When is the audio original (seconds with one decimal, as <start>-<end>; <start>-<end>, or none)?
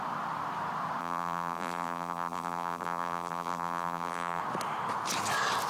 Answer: 0.0-1.0; 4.4-5.7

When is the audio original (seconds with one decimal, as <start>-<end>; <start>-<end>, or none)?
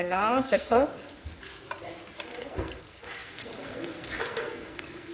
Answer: 1.5-2.2